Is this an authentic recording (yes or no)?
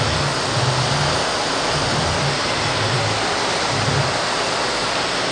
yes